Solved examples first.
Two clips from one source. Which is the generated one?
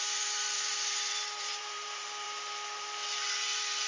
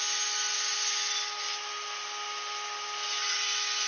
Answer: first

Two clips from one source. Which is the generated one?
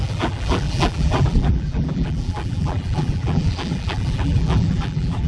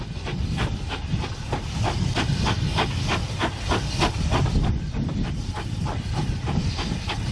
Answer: first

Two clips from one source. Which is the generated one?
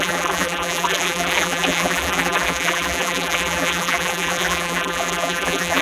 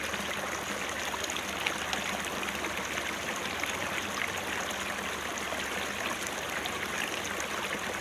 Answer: first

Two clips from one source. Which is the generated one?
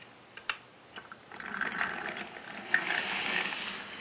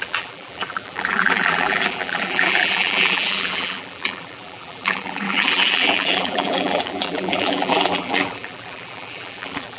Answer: second